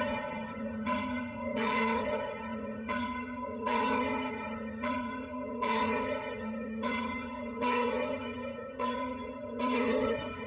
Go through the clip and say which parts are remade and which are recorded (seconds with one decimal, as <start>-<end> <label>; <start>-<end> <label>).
0.0-10.5 remade